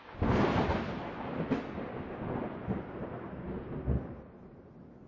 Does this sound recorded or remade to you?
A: recorded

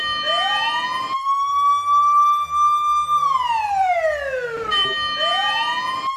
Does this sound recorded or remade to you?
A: recorded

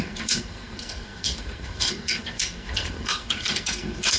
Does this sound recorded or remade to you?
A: remade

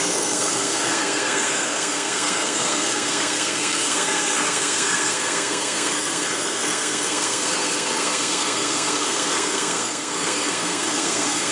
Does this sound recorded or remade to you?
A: remade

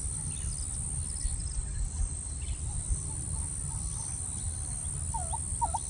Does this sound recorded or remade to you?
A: recorded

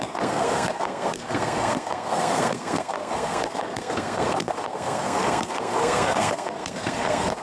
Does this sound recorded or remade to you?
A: remade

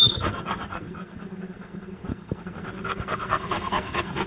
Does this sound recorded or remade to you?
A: remade